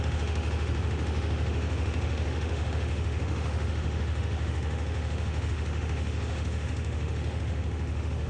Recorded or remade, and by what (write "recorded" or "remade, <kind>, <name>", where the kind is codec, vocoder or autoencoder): remade, autoencoder, DAC-VAE